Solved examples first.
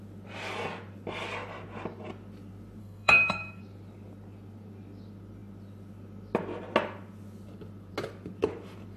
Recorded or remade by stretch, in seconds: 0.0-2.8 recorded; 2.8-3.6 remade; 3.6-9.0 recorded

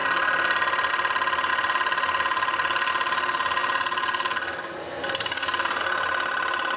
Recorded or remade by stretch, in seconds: 0.0-6.8 recorded